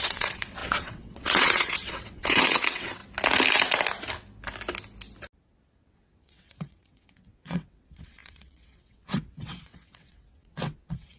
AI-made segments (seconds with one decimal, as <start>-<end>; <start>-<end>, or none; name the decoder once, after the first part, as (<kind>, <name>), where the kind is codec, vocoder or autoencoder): 0.0-3.0 (vocoder, WaveNeXt); 5.8-11.2